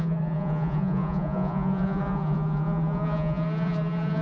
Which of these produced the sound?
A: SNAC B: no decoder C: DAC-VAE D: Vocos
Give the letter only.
D